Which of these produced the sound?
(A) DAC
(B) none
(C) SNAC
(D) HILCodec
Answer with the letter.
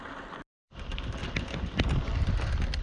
B